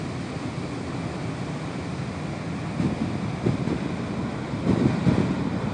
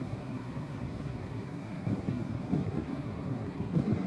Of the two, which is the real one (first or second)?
first